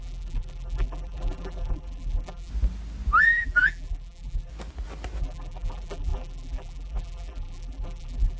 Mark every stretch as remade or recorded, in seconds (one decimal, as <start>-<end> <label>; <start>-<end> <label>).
0.0-2.5 remade; 2.5-3.2 recorded; 3.2-4.5 remade; 4.5-5.2 recorded; 5.2-8.4 remade